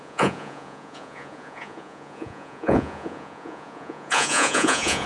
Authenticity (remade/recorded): remade